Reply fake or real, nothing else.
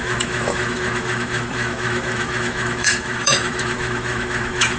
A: fake